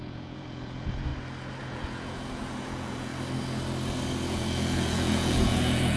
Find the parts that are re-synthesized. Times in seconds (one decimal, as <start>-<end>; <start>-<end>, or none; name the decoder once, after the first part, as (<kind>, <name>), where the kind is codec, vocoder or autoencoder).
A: 0.0-1.1 (vocoder, Vocos); 1.6-3.1; 4.3-6.0